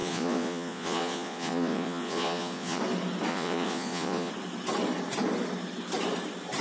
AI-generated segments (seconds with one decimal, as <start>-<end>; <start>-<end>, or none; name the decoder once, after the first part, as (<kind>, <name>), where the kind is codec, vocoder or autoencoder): 0.0-2.8 (vocoder, Vocos); 3.3-4.3